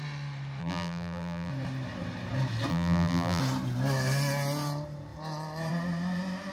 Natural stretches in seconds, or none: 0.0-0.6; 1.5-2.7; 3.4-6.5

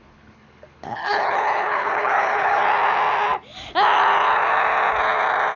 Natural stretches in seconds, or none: 2.6-5.6

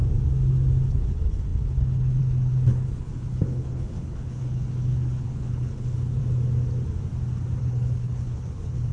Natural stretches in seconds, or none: 0.0-0.9; 6.2-7.6

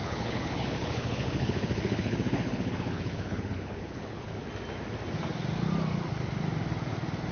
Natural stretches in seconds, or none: 4.4-7.3

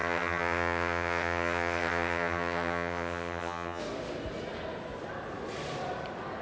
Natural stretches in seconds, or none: 3.8-6.4

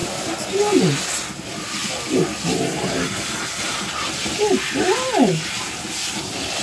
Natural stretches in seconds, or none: 0.0-6.6

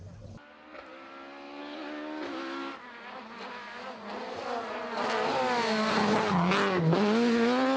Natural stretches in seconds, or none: 0.0-7.8

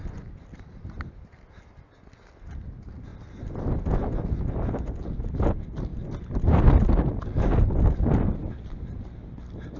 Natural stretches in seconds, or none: 0.0-9.8